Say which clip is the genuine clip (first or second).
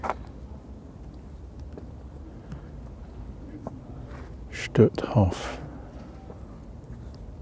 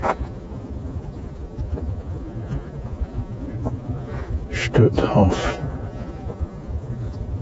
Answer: first